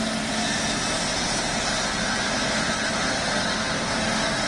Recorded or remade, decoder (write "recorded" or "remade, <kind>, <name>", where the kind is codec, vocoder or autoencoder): recorded